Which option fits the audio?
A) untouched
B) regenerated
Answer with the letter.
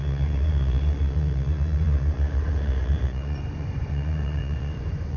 B